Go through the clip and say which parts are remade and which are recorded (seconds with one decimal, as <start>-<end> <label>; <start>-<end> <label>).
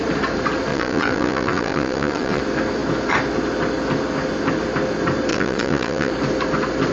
0.0-0.7 recorded; 0.7-2.4 remade; 2.4-5.3 recorded; 5.3-6.1 remade; 6.1-6.9 recorded